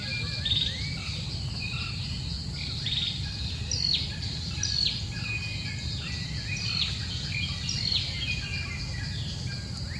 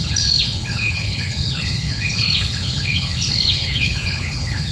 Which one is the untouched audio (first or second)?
first